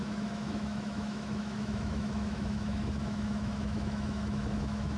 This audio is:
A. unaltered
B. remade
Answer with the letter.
B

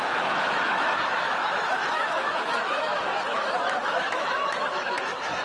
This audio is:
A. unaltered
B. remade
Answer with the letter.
B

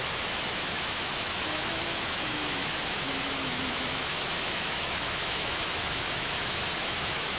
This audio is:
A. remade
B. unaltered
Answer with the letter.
A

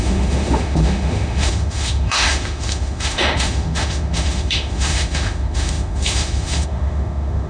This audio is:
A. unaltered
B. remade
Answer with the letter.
B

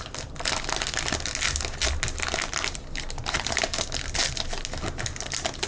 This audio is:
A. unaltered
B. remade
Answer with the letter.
A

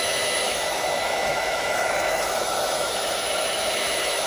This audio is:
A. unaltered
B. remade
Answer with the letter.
B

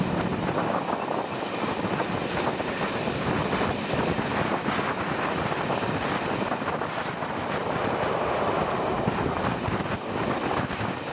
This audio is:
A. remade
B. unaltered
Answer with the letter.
B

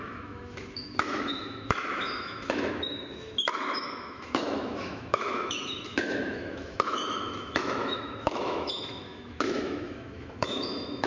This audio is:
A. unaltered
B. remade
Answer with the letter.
B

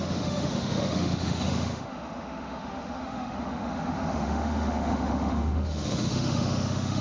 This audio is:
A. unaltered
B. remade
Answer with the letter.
B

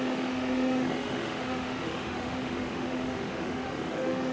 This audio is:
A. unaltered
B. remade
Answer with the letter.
B